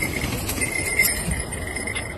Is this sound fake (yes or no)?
yes